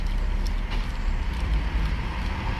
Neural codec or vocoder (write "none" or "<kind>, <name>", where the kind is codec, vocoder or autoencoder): none